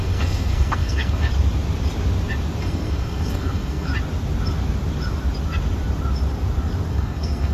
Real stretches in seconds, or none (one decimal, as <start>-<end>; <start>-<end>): 1.3-2.6; 3.9-6.9